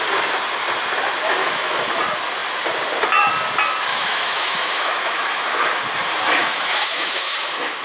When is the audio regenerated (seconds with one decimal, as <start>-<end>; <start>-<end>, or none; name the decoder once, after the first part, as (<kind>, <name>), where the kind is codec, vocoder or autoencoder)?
1.4-2.0 (autoencoder, DAC-VAE); 3.9-5.8; 6.4-7.8